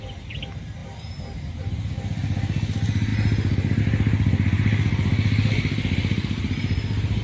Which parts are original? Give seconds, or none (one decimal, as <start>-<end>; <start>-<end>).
0.0-0.8; 1.6-7.2